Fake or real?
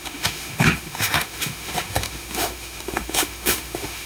fake